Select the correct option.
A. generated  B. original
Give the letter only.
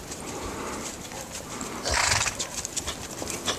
A